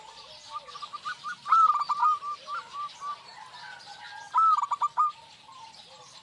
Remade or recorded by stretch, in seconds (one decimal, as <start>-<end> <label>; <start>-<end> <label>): 0.0-6.2 recorded